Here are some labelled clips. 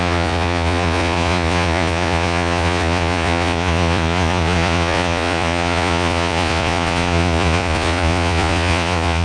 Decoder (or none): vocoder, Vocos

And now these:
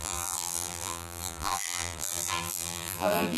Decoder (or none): vocoder, BigVGAN v2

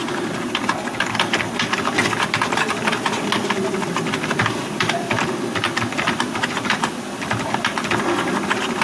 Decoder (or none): none